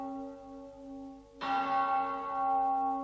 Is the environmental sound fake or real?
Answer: real